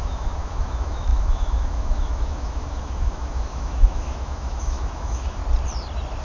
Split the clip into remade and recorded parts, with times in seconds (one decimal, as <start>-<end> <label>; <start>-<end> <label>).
0.0-5.4 remade; 5.4-6.2 recorded